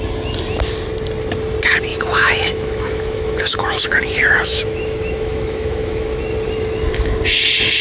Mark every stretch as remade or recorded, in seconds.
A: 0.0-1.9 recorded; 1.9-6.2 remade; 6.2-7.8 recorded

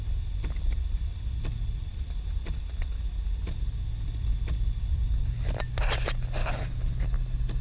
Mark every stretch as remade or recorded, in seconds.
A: 0.0-6.4 recorded; 6.4-7.0 remade; 7.0-7.6 recorded

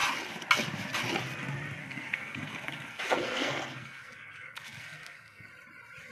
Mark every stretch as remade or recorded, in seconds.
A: 0.0-1.8 recorded; 1.8-5.5 remade; 5.5-6.1 recorded

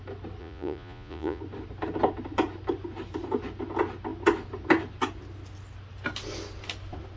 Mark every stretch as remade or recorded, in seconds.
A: 0.0-0.4 recorded; 0.4-1.4 remade; 1.4-7.2 recorded

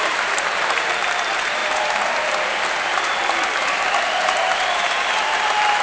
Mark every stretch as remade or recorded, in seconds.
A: 0.0-5.8 remade

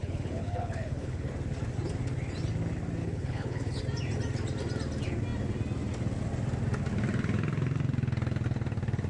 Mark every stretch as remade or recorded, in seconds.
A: 0.0-1.3 remade; 1.3-3.0 recorded; 3.0-3.8 remade; 3.8-9.1 recorded

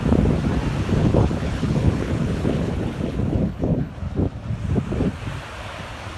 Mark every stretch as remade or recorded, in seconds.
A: 0.0-1.0 recorded; 1.0-3.9 remade; 3.9-6.2 recorded